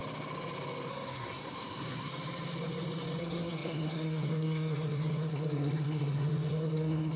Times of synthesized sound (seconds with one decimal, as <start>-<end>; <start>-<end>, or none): 0.9-2.1; 3.2-7.2